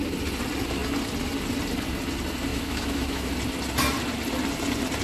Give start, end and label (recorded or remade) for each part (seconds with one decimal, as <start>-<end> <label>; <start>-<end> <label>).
0.0-2.5 recorded; 2.5-3.3 remade; 3.3-5.0 recorded